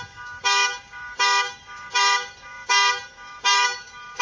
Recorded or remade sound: remade